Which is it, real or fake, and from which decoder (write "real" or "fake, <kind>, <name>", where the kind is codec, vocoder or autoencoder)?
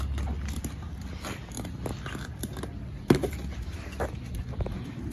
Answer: real